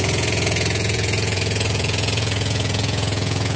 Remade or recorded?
remade